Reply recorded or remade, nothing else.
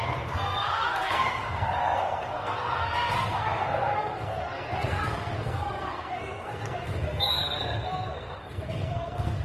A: remade